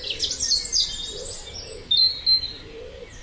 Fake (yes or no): no